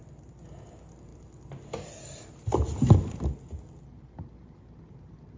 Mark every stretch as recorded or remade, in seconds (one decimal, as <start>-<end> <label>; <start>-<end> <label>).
0.0-5.4 recorded